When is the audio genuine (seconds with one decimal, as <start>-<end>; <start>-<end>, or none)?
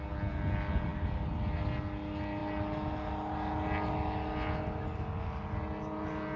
0.0-6.4